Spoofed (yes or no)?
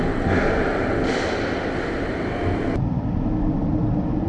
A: no